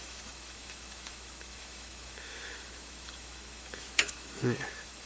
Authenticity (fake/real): fake